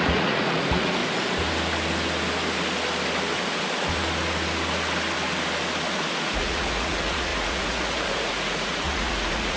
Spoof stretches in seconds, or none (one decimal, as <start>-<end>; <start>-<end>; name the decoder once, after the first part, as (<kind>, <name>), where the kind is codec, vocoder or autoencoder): 0.0-1.0 (vocoder, Vocos); 6.2-9.6